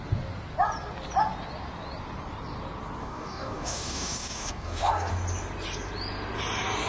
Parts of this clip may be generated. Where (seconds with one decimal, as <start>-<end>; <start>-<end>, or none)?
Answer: 3.0-5.1